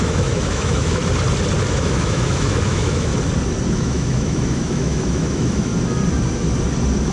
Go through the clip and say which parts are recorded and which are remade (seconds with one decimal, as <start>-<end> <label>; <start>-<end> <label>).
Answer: 0.0-1.0 remade; 1.0-1.7 recorded; 1.7-3.1 remade; 3.1-3.7 recorded; 3.7-5.7 remade; 5.7-7.1 recorded